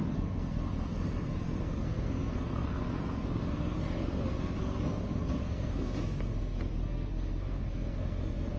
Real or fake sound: fake